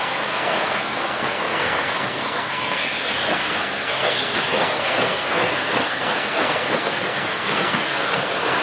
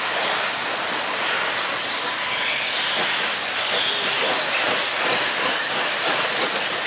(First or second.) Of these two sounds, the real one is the second